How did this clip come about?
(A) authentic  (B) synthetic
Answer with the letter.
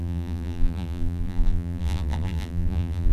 B